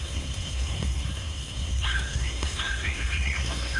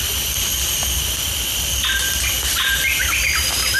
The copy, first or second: first